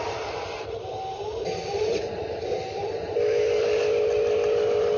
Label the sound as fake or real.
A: real